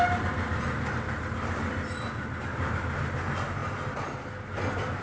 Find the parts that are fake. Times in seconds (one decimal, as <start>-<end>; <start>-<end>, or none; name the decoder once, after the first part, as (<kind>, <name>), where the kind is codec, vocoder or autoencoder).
none